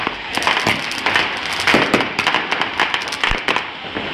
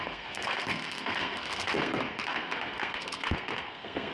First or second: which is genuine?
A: first